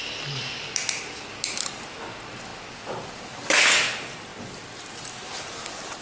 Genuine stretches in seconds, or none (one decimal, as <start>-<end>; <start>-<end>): 0.0-6.0